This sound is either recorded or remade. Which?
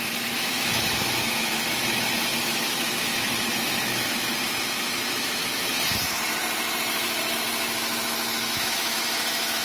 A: remade